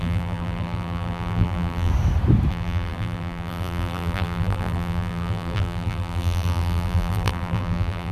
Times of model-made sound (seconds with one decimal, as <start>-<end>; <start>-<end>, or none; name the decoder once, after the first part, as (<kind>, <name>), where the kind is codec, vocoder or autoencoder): 0.0-1.9 (vocoder, BigVGAN v2); 2.5-8.1